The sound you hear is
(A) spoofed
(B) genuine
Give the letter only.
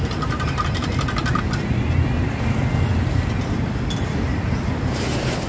B